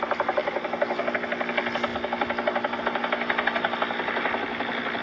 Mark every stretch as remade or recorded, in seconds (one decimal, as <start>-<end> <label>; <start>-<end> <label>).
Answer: 0.0-5.0 recorded